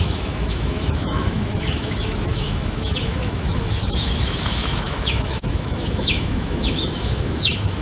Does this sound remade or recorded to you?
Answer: remade